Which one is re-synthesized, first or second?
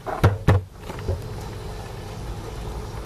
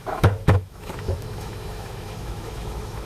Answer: second